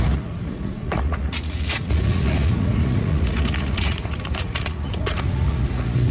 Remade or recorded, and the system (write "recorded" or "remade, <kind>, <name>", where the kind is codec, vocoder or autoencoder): remade, vocoder, Vocos